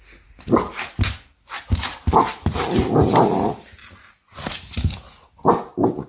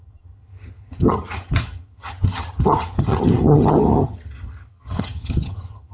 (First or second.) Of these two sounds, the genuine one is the first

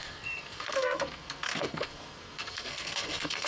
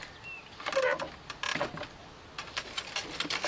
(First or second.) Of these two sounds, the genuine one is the second